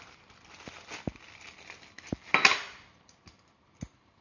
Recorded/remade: recorded